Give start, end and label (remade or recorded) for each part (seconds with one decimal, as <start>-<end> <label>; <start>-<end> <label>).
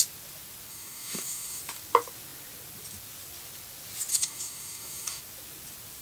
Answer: 0.0-0.7 recorded; 0.7-1.6 remade; 1.6-4.1 recorded; 4.1-5.2 remade; 5.2-6.0 recorded